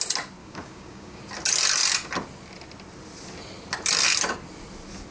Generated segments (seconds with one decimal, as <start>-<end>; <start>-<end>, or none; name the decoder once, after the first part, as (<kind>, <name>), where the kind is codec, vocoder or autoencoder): 0.4-1.2 (codec, DAC)